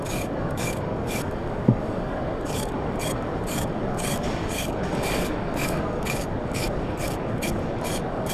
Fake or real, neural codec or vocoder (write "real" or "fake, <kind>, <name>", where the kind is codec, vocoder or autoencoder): fake, codec, DAC